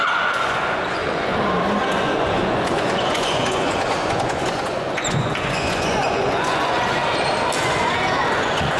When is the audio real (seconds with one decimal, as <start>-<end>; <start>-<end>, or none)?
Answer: 1.3-1.8; 7.0-7.6